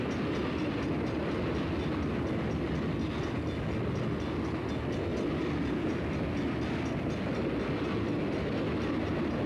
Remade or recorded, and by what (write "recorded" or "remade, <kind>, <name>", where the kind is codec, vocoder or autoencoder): recorded